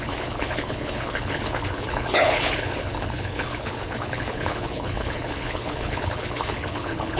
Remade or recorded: remade